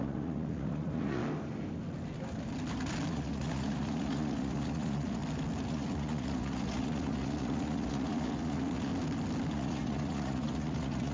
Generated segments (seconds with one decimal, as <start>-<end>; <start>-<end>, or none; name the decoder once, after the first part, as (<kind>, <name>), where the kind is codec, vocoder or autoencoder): 0.0-1.2 (vocoder, Vocos); 3.1-5.2; 5.7-8.9; 9.5-11.1